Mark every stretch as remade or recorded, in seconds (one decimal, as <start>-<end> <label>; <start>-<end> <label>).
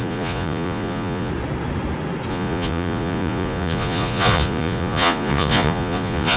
0.0-1.3 remade; 1.3-2.3 recorded; 2.3-6.4 remade